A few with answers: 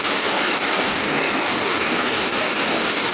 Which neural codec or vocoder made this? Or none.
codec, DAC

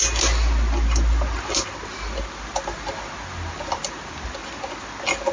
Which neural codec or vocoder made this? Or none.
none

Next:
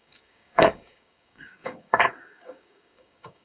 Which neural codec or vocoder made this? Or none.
codec, DAC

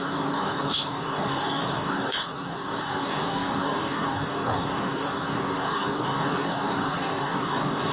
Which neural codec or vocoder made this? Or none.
codec, DAC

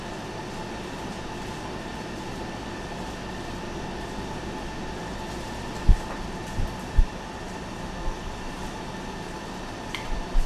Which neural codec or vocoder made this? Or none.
none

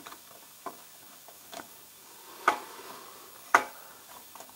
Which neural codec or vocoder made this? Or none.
codec, DAC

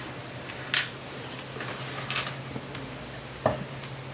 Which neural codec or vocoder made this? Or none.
none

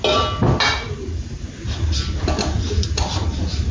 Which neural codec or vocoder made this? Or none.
none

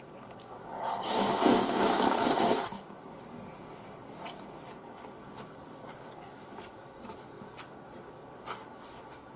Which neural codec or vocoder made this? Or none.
codec, DAC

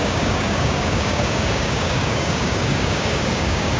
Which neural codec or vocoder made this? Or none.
codec, DAC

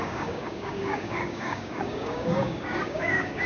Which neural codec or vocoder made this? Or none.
codec, DAC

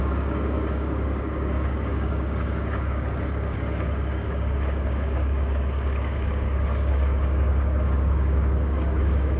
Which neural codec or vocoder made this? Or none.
codec, DAC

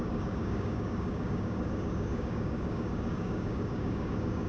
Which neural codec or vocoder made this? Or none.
codec, DAC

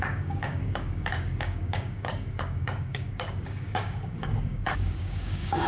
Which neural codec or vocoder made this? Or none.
codec, DAC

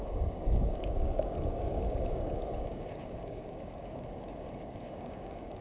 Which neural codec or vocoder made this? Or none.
codec, DAC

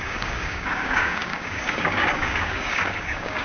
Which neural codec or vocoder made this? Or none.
codec, DAC